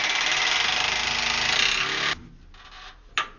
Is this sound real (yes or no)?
yes